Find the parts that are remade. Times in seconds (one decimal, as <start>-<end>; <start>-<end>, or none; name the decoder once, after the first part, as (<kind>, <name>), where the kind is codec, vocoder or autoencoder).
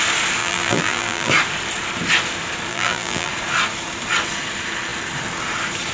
0.4-1.3 (vocoder, BigVGAN v2); 2.7-3.3